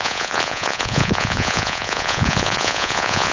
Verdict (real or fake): fake